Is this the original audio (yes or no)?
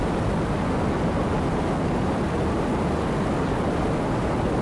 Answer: yes